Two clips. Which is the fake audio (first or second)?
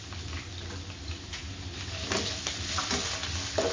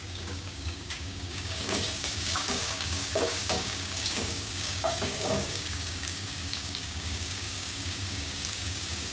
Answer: second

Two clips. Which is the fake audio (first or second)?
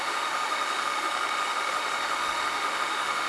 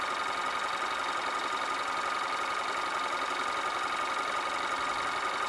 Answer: first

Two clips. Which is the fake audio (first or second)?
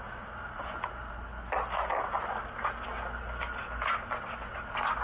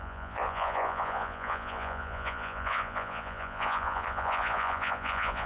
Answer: second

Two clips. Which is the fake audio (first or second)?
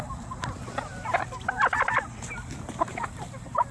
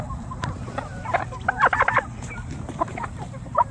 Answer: second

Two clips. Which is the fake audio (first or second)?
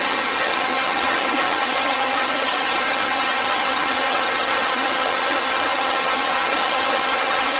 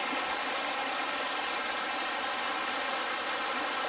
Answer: first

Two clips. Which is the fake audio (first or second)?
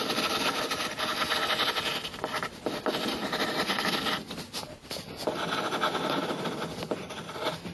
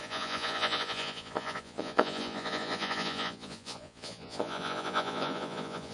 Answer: second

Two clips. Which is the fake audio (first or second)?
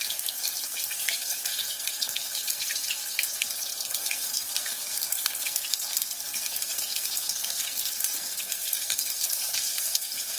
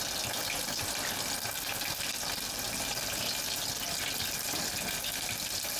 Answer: first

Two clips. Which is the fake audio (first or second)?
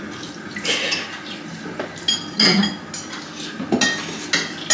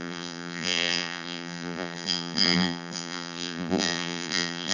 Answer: second